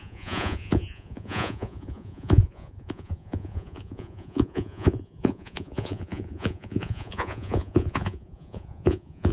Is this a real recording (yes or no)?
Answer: no